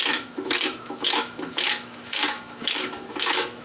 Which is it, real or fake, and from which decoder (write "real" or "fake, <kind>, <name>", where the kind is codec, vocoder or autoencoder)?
fake, autoencoder, DAC-VAE